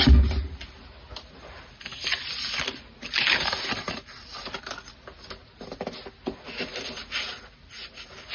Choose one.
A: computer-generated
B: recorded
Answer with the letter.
B